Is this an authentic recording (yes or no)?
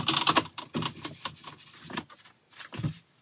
yes